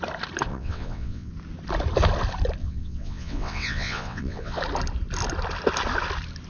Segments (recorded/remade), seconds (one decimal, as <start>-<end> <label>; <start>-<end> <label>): 0.0-0.5 recorded; 0.5-1.3 remade; 1.3-2.6 recorded; 2.6-4.6 remade; 4.6-6.5 recorded